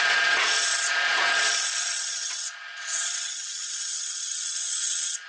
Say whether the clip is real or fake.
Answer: fake